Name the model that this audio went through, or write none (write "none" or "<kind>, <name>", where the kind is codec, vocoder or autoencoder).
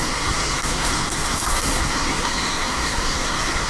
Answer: codec, SNAC